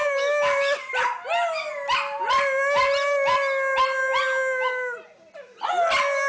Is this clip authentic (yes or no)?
yes